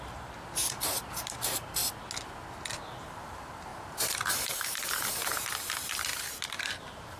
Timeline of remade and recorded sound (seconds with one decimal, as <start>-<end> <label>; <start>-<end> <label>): 0.0-1.8 remade; 1.8-3.1 recorded; 3.1-7.2 remade